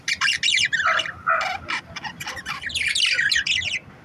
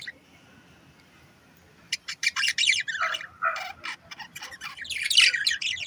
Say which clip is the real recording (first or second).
first